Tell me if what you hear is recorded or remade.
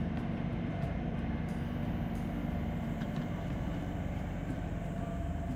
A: remade